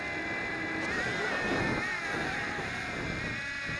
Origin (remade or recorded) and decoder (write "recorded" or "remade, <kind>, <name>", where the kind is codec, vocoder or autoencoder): recorded